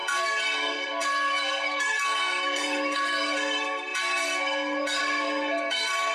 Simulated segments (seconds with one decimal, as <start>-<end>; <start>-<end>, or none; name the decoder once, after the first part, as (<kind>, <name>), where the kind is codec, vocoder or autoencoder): 0.0-6.1 (codec, SNAC)